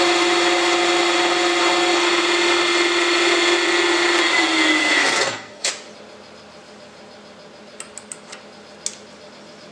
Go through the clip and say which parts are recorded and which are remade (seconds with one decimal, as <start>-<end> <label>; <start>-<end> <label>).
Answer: 0.0-4.8 recorded; 4.8-5.7 remade; 5.7-9.7 recorded